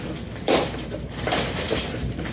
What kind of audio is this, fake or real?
real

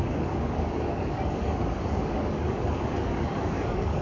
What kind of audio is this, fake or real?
fake